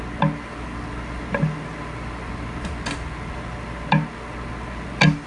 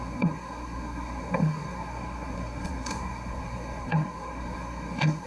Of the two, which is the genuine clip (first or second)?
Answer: first